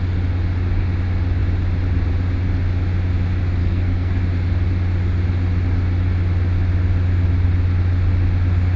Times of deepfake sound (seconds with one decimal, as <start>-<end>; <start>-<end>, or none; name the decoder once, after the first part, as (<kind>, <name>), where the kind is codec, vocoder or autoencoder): 3.6-4.2 (codec, SNAC)